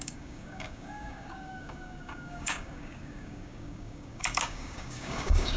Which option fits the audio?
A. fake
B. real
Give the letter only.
A